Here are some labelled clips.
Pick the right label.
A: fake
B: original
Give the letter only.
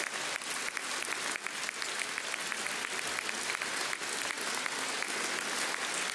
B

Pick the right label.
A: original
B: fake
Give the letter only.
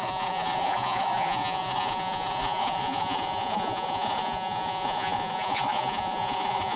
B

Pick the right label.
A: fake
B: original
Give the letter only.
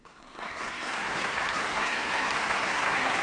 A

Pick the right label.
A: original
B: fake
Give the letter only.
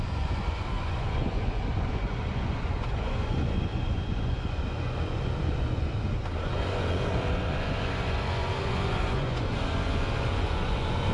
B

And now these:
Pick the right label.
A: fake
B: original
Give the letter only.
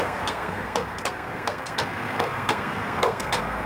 A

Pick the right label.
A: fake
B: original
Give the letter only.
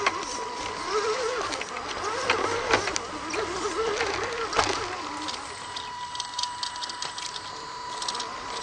B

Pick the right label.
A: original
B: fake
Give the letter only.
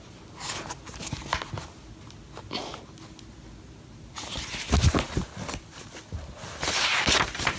A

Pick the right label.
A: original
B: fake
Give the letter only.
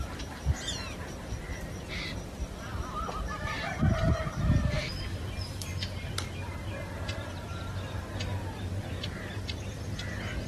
B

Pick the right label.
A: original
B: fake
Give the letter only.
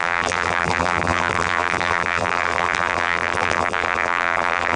B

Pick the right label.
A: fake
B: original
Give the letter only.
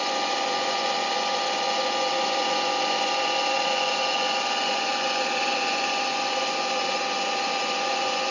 A